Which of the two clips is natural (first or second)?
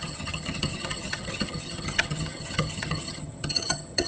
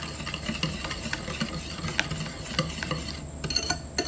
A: second